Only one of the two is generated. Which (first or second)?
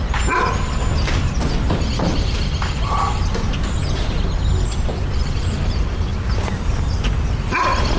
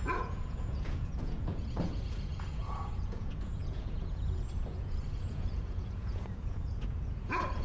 second